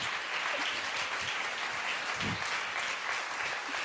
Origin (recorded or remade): recorded